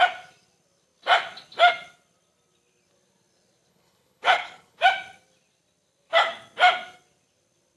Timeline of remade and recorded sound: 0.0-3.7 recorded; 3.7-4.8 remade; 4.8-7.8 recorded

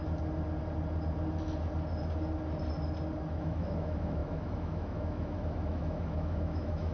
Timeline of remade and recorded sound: 0.0-3.4 recorded; 3.4-6.9 remade

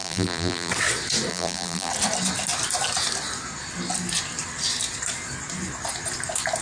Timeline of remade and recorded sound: 0.0-0.7 remade; 0.7-1.3 recorded; 1.3-1.9 remade; 1.9-6.6 recorded

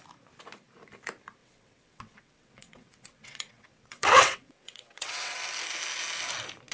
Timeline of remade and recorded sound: 0.0-1.4 recorded; 1.4-5.4 remade; 5.4-6.7 recorded

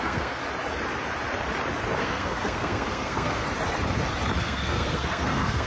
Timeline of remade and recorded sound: 0.0-0.4 remade; 0.4-2.0 recorded; 2.0-3.4 remade; 3.4-4.4 recorded; 4.4-5.7 remade

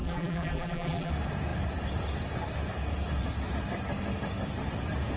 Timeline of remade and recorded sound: 0.0-1.1 remade; 1.1-5.2 recorded

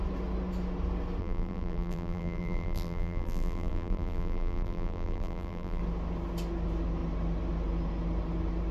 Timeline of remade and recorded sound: 0.0-1.2 recorded; 1.2-5.8 remade; 5.8-8.7 recorded